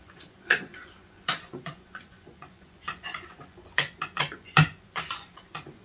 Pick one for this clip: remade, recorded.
remade